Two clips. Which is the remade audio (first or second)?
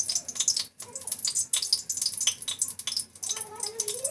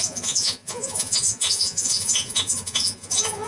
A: second